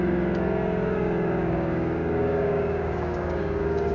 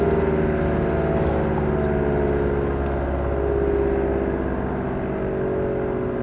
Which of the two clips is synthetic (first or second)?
first